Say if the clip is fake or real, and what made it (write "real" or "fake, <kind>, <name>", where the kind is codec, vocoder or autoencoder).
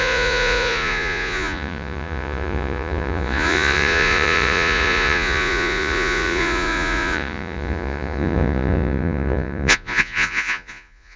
fake, vocoder, Vocos